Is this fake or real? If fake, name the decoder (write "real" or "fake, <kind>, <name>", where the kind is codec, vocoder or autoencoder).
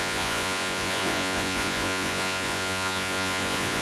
fake, vocoder, Vocos